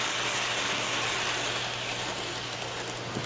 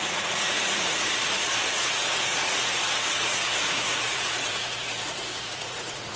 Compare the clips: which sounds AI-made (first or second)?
second